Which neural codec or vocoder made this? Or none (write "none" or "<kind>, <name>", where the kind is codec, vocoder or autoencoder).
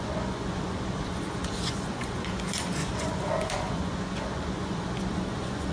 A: vocoder, Vocos